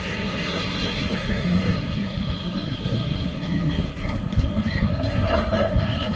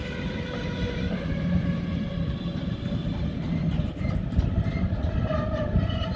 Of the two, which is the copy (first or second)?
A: first